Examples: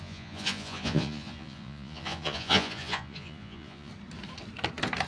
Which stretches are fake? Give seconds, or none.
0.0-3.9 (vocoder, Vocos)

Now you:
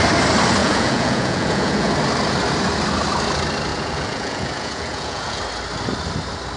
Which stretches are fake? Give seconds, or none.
0.6-1.9 (vocoder, Vocos); 3.7-5.4

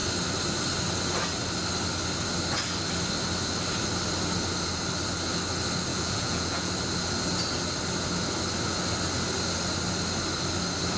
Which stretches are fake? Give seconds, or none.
5.9-6.7 (vocoder, Vocos)

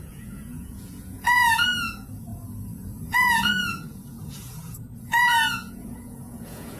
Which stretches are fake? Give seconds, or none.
0.0-6.8 (vocoder, Vocos)